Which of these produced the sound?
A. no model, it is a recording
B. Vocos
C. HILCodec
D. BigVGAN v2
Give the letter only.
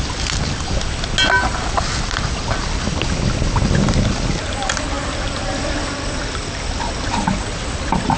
A